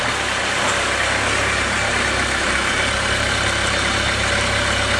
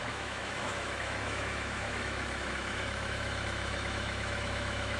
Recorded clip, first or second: first